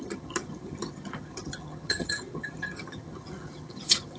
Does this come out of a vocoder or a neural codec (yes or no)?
yes